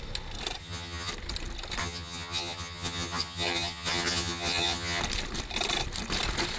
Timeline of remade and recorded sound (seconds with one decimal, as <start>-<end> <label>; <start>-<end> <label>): 0.0-0.6 recorded; 0.6-1.1 remade; 1.1-1.8 recorded; 1.8-5.0 remade; 5.0-6.6 recorded